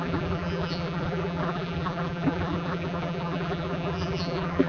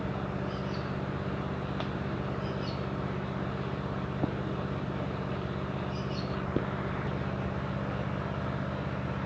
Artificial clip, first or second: first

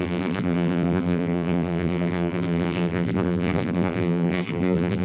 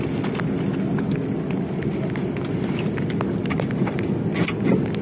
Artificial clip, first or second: first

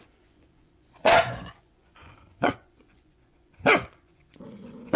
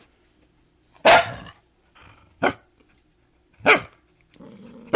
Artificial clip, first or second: first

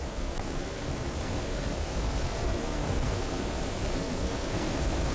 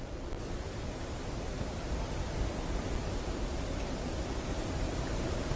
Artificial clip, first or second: first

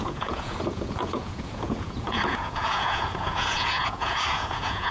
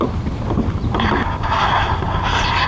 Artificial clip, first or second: first